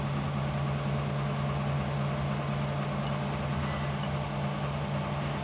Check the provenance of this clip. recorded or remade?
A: recorded